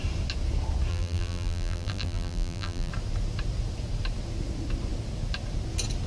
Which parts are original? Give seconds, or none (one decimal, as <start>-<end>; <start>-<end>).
0.0-0.9; 2.9-6.1